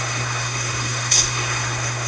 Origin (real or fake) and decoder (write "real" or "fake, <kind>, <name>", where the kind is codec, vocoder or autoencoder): fake, codec, SNAC